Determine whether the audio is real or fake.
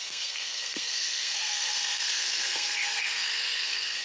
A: fake